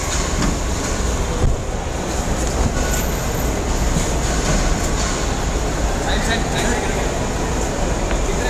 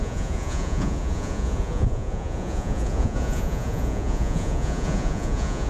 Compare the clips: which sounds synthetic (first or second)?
second